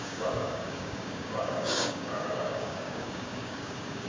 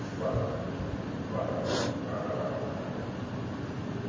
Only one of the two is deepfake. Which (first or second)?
first